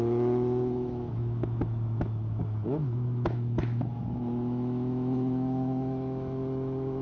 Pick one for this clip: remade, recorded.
remade